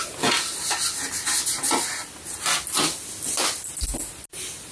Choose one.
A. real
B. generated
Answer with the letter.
A